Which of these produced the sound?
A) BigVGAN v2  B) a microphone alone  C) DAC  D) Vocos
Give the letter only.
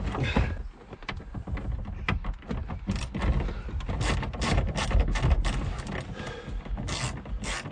B